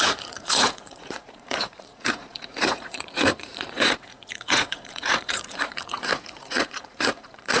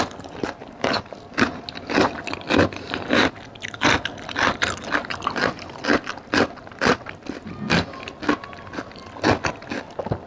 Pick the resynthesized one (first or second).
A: first